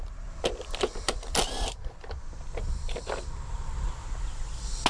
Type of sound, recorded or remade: recorded